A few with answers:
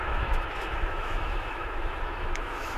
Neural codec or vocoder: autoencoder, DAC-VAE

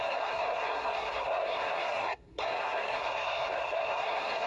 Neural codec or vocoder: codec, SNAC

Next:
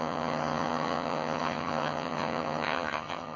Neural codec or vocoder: vocoder, HiFi-GAN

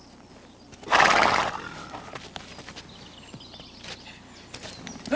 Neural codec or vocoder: none